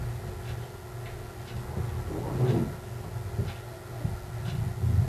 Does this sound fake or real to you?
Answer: real